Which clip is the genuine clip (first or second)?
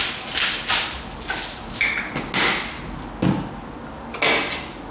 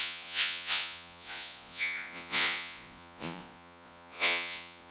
first